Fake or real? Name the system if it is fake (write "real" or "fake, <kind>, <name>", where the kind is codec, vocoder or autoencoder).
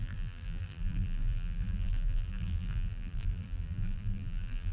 fake, vocoder, BigVGAN v2